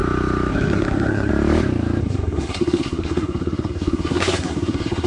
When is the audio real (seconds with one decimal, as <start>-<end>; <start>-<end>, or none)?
0.0-0.5; 1.3-2.0